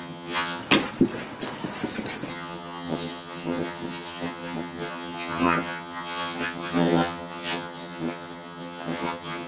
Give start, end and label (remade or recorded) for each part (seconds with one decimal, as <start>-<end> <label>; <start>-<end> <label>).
0.0-0.6 remade; 0.6-2.3 recorded; 2.3-9.5 remade